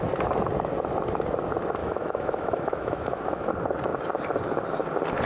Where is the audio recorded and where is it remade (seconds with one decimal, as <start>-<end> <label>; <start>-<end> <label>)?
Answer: 0.0-1.8 recorded; 1.8-3.5 remade; 3.5-5.3 recorded